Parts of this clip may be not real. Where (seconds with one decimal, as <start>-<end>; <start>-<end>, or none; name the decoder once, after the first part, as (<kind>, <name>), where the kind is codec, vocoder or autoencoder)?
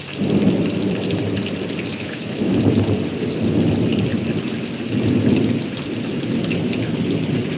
1.9-2.6 (autoencoder, DAC-VAE)